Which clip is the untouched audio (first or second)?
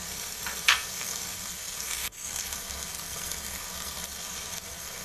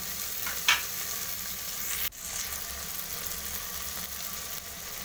second